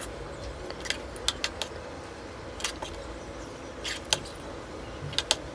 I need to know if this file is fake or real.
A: real